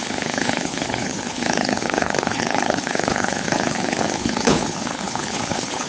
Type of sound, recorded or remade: remade